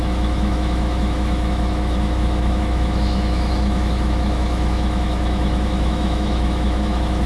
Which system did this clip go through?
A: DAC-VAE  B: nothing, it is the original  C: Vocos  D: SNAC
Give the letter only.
A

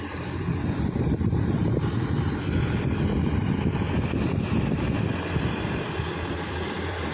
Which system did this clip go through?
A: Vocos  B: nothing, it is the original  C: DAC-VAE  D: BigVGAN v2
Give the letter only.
D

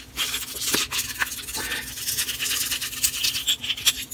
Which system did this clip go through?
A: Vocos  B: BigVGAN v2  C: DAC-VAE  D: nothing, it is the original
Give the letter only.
D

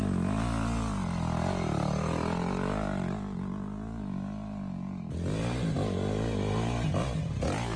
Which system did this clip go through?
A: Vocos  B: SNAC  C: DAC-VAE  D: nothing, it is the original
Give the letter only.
D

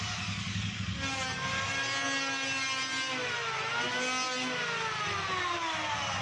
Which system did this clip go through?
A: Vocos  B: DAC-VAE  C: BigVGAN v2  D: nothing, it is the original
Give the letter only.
D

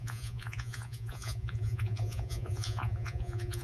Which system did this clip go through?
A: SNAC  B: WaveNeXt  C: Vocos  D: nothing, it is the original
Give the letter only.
C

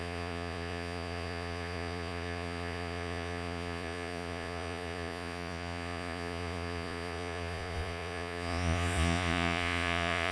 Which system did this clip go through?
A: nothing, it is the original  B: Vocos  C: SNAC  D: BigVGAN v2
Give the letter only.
B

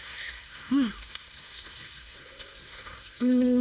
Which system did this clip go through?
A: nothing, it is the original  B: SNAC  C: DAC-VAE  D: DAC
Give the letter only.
B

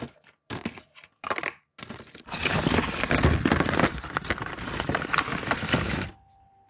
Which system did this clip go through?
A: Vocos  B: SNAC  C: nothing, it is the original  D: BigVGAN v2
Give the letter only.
C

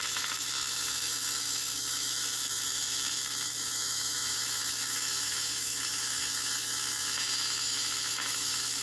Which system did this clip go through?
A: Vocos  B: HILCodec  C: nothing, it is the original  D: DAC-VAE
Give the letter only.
D